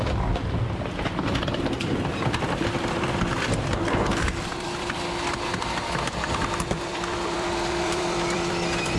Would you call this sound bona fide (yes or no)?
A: no